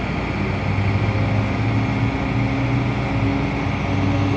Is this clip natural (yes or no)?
yes